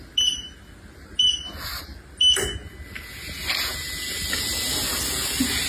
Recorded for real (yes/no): yes